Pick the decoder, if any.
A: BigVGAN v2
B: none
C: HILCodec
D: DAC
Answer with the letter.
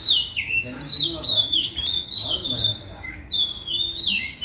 D